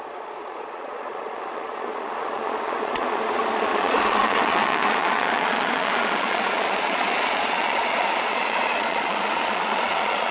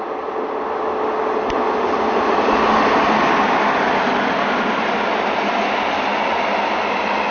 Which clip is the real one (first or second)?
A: second